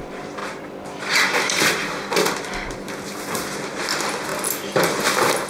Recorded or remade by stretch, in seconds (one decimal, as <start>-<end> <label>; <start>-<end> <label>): 0.0-4.3 remade; 4.3-5.1 recorded; 5.1-5.5 remade